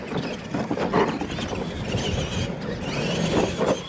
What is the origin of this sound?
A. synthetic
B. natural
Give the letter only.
B